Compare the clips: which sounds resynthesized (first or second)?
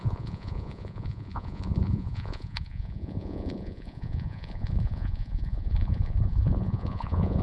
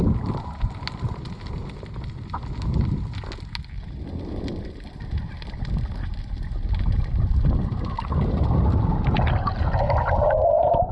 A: first